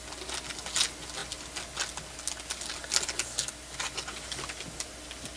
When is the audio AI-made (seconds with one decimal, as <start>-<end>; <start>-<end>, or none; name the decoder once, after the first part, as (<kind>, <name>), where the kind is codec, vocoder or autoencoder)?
none